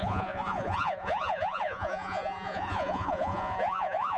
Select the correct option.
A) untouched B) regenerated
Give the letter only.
B